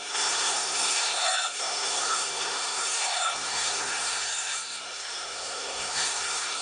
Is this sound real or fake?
fake